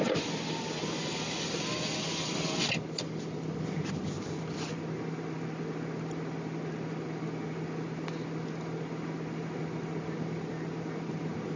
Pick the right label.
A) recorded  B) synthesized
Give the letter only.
A